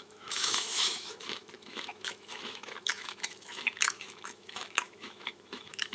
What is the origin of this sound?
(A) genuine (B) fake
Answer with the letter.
B